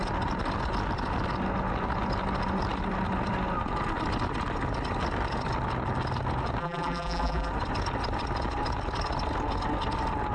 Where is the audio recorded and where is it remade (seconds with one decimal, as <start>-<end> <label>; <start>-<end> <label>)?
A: 0.0-6.6 recorded; 6.6-7.5 remade; 7.5-10.3 recorded